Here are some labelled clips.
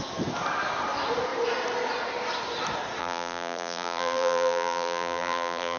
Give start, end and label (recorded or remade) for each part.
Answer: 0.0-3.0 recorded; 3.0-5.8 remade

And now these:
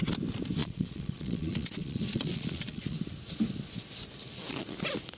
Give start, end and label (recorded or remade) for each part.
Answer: 0.0-0.6 recorded; 0.6-3.0 remade; 3.0-5.2 recorded

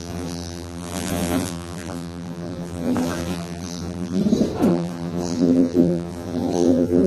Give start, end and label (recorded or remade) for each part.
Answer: 0.0-4.2 remade; 4.2-4.7 recorded; 4.7-7.1 remade

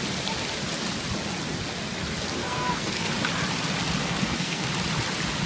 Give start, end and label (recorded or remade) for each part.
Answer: 0.0-2.4 recorded; 2.4-3.1 remade; 3.1-4.0 recorded; 4.0-4.7 remade; 4.7-5.5 recorded

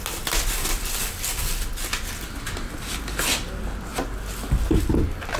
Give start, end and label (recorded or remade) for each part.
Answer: 0.0-5.4 recorded

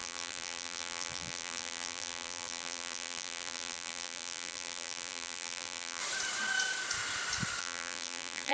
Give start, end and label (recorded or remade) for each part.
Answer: 0.0-6.0 remade; 6.0-7.6 recorded; 7.6-8.5 remade

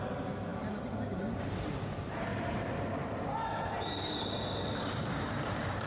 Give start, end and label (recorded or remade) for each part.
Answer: 0.0-0.5 recorded; 0.5-1.4 remade; 1.4-2.3 recorded; 2.3-4.2 remade; 4.2-5.1 recorded; 5.1-5.9 remade

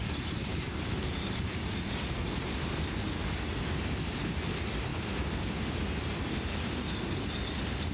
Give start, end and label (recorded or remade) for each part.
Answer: 0.0-7.9 recorded